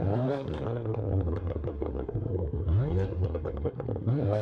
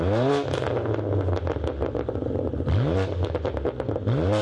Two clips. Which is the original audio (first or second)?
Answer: second